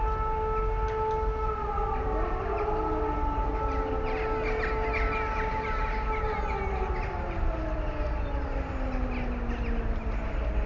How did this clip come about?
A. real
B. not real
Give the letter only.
A